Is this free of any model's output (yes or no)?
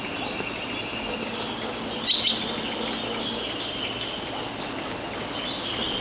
yes